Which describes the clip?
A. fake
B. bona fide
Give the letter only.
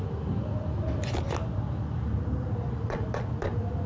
B